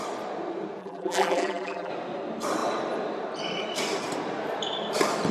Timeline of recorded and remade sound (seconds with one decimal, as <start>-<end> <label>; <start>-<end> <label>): 0.0-0.8 recorded; 0.8-1.9 remade; 1.9-5.3 recorded